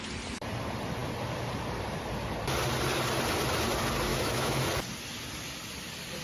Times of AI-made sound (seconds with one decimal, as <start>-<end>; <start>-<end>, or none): 4.1-4.6